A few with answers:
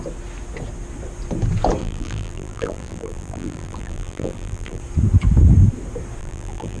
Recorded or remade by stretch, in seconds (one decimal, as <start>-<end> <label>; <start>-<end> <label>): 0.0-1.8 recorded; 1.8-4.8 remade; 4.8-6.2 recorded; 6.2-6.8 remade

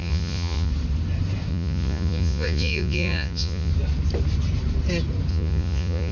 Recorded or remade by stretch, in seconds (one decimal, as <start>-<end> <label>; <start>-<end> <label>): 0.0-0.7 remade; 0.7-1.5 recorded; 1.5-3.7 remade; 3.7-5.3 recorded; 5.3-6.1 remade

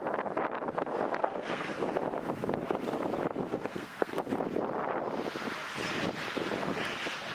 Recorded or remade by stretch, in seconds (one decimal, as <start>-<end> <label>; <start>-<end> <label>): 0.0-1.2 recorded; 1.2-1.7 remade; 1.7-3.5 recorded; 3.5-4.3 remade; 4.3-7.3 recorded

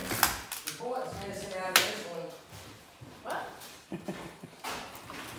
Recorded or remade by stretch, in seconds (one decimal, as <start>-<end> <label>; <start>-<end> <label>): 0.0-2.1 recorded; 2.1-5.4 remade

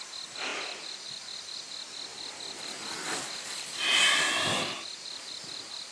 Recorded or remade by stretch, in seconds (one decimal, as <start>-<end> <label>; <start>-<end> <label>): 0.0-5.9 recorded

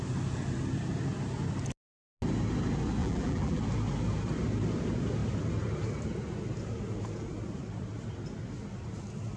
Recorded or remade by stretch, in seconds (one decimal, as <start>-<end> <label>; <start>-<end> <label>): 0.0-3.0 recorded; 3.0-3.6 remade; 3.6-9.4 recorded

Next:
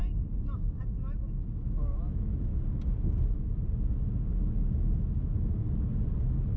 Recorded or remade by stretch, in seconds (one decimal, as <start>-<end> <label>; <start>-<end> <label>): 0.0-1.6 recorded; 1.6-2.5 remade; 2.5-6.6 recorded